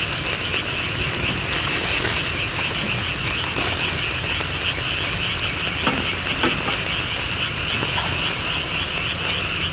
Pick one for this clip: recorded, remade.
recorded